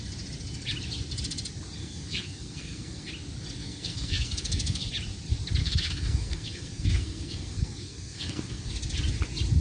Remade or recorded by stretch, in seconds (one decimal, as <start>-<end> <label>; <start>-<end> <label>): 0.0-1.8 recorded; 1.8-3.1 remade; 3.1-3.6 recorded; 3.6-4.9 remade; 4.9-5.6 recorded; 5.6-8.7 remade; 8.7-9.6 recorded